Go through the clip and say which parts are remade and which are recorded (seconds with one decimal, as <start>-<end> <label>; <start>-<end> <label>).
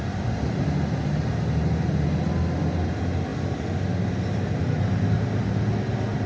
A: 0.0-6.3 recorded